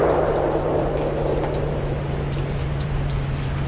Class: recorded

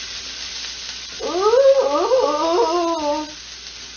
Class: recorded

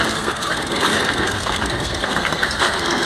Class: remade